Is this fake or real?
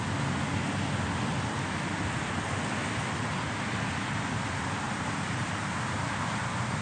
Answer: real